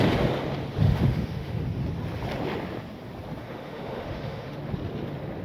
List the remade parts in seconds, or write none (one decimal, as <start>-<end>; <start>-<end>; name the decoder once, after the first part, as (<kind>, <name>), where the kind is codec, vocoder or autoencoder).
0.8-1.6 (autoencoder, DAC-VAE); 3.4-4.6